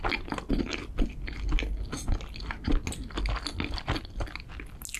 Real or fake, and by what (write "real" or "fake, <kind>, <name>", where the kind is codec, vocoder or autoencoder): real